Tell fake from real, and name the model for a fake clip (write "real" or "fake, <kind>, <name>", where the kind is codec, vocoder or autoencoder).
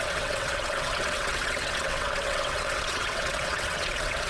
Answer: fake, vocoder, WaveNeXt